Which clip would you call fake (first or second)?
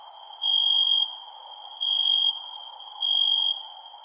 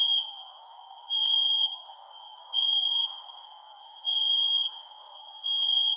second